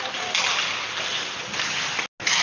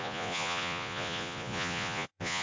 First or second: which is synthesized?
second